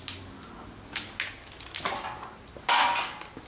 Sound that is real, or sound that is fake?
real